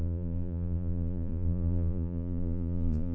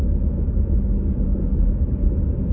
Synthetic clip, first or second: first